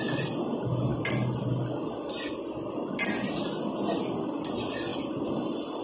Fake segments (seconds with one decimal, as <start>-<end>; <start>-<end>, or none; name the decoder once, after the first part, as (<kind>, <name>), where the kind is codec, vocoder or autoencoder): none